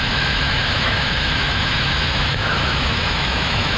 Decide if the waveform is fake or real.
fake